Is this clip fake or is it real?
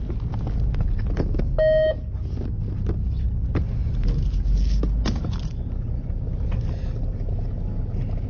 real